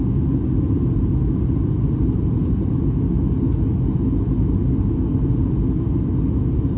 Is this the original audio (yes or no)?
yes